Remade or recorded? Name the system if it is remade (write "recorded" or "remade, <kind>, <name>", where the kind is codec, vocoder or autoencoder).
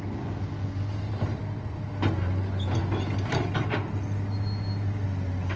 recorded